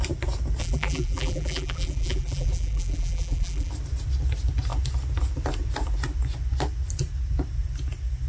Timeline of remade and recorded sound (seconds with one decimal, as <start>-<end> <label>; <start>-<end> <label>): 0.0-0.6 recorded; 0.6-3.7 remade; 3.7-8.3 recorded